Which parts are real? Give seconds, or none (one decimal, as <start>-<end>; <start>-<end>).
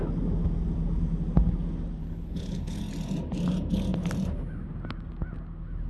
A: 0.0-2.0; 2.8-5.9